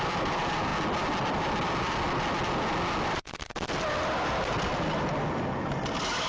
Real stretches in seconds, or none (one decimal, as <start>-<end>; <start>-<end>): 0.0-6.3